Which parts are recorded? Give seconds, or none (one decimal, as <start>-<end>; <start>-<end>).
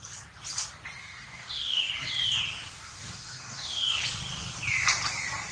0.0-1.0; 1.9-2.7; 4.0-5.5